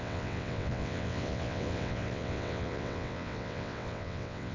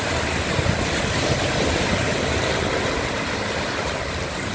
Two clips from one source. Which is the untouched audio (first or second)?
second